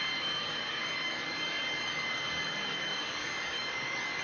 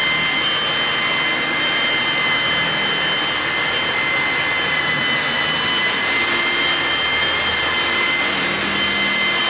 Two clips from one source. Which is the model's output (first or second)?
first